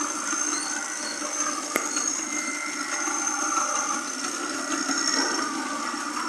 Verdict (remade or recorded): recorded